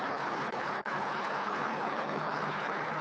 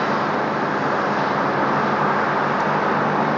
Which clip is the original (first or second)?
second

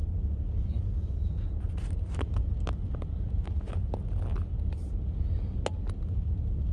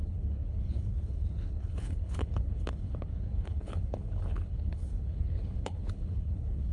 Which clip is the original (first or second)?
first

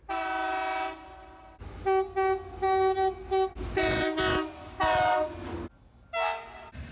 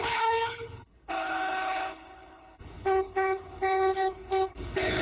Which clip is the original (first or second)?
first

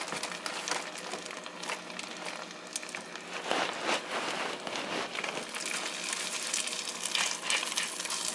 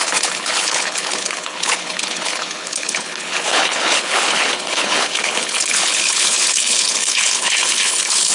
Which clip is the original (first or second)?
first